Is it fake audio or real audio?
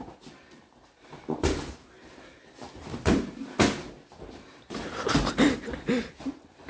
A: real